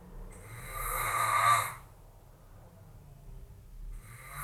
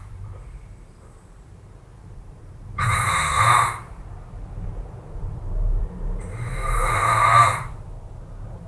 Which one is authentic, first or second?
first